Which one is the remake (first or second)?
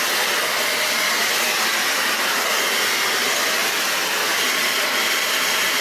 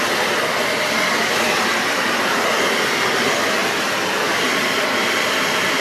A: second